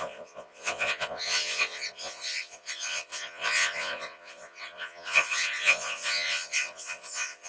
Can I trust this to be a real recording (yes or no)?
no